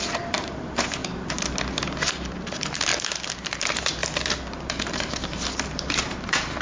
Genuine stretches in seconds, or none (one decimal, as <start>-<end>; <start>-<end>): 1.0-2.3; 2.9-3.4; 4.0-4.5